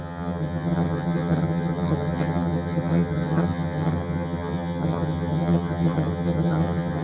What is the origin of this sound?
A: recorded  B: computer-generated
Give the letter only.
B